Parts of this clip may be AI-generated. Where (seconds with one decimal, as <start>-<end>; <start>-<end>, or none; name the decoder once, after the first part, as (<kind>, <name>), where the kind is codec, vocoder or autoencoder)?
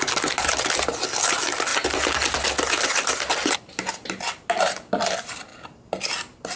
none